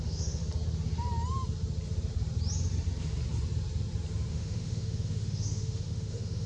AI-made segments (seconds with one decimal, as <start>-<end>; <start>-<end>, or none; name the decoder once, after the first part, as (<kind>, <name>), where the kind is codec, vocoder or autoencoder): 0.0-0.4 (autoencoder, DAC-VAE); 4.3-6.5